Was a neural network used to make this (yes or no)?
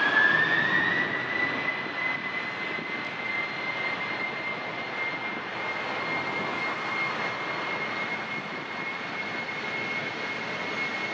no